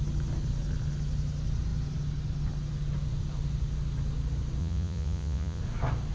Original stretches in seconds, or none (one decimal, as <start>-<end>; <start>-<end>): 0.0-4.6; 5.6-6.1